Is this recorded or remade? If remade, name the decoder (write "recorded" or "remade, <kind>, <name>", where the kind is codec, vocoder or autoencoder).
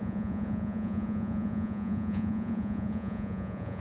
remade, vocoder, Vocos